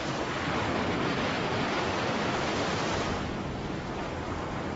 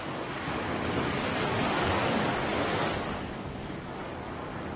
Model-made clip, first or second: second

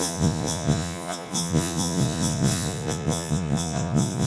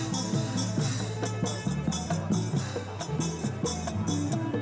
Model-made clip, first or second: first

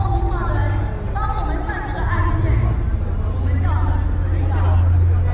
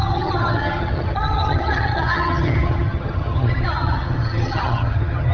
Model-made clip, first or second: second